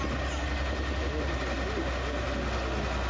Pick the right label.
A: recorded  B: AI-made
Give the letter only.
A